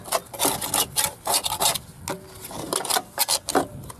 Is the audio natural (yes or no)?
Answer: yes